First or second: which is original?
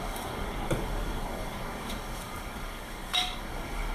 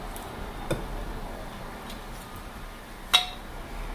second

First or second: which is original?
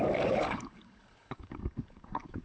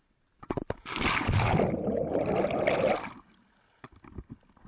second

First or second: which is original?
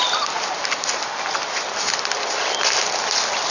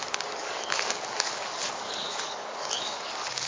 first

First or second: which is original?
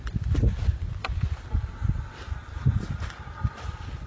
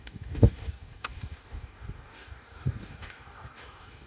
first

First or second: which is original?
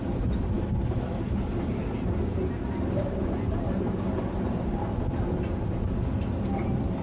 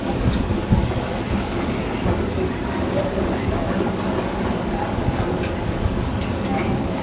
first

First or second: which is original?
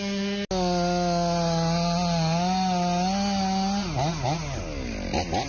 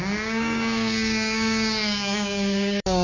first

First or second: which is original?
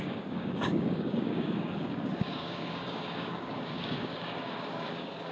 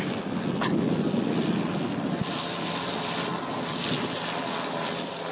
second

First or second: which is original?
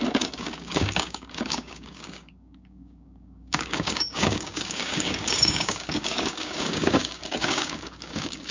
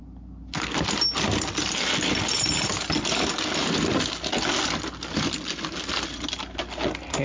second